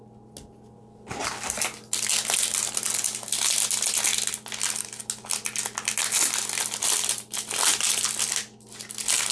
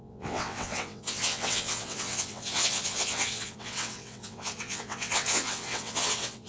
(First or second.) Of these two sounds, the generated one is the second